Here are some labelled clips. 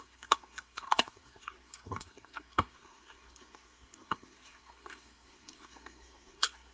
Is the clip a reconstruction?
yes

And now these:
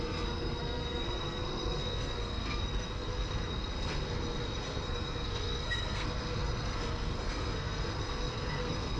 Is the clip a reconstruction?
yes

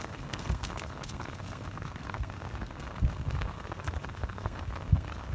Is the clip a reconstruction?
yes